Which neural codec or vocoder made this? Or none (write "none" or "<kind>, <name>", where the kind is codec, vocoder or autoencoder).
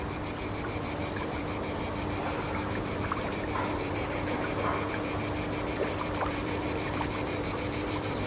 vocoder, BigVGAN v2